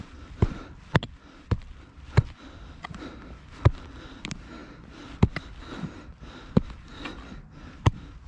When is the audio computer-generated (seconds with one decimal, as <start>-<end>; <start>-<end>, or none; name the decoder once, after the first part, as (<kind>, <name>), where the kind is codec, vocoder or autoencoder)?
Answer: none